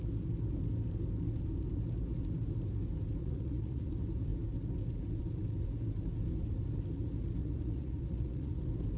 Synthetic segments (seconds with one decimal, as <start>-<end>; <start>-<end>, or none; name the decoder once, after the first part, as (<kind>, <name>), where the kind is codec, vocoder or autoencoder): 3.2-3.9 (vocoder, Vocos); 7.4-8.6